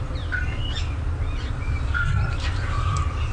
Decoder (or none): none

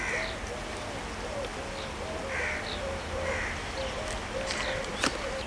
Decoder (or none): none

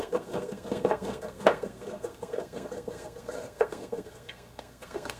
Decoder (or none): codec, SNAC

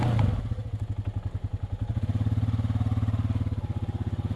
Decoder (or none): none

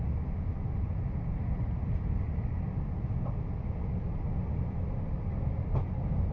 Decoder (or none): none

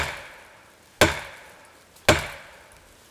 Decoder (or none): none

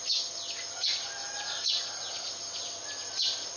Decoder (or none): none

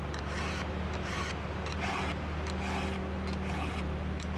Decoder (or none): none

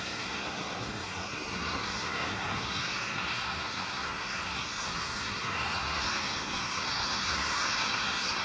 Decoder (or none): codec, SNAC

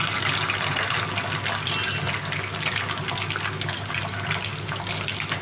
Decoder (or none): none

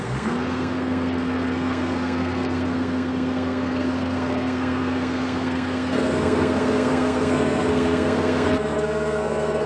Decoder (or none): codec, SNAC